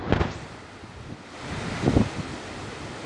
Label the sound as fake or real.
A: real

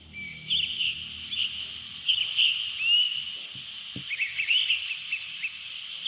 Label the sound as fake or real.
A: real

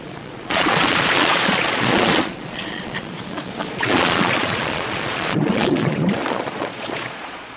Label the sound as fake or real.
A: fake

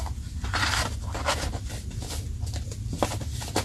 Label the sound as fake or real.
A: real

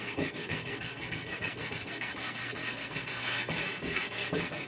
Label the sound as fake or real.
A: fake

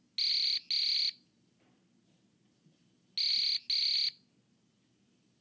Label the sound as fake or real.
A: real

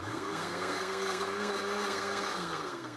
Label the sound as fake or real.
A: fake